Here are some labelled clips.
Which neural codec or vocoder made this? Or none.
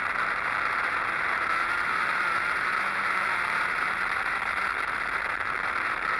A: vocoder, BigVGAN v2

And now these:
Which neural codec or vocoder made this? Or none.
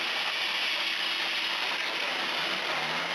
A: none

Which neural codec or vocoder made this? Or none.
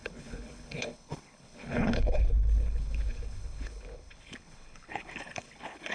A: codec, HILCodec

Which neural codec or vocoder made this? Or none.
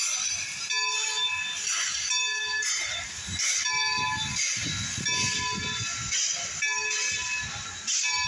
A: none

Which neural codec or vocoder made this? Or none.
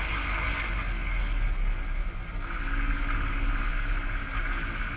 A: none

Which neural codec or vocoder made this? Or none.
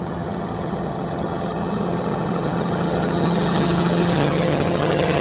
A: vocoder, HiFi-GAN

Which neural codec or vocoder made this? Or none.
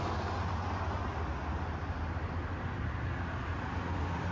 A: none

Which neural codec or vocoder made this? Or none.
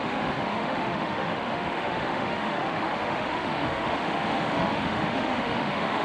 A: autoencoder, DAC-VAE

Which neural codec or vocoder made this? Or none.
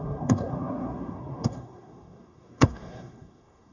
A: codec, SNAC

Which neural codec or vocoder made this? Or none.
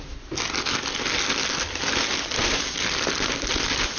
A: none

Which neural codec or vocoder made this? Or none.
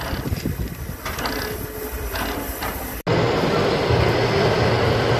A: none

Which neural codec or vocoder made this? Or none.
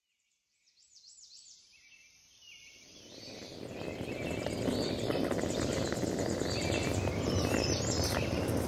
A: none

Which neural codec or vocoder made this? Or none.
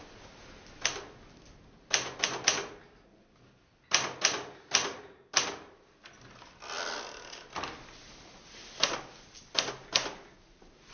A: none